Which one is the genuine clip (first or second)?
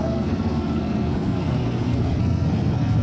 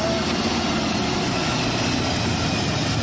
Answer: second